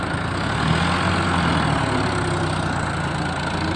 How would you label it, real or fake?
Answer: real